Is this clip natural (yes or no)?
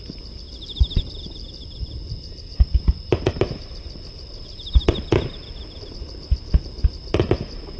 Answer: yes